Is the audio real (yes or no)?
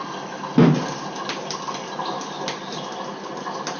yes